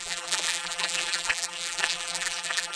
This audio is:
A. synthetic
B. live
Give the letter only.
A